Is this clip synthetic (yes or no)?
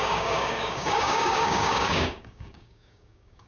yes